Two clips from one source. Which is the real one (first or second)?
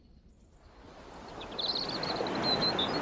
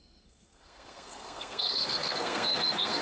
first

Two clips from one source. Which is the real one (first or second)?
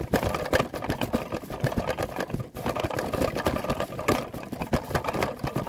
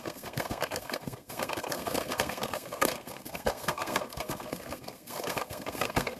first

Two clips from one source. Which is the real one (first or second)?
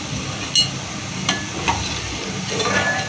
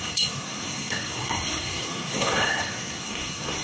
first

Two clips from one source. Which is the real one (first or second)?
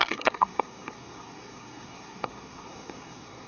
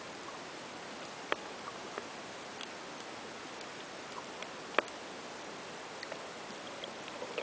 second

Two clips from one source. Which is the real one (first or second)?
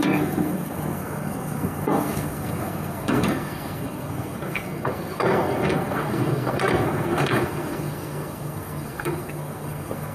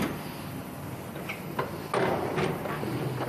second